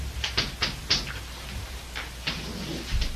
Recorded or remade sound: recorded